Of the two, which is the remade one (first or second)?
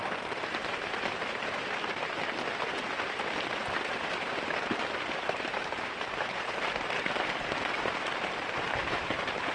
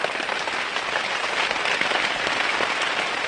first